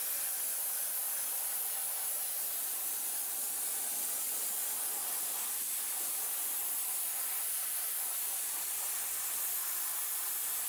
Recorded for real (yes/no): yes